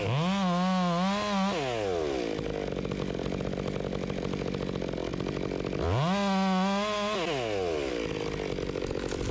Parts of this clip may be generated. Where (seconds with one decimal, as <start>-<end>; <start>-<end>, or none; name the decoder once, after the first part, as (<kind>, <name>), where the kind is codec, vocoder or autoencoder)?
none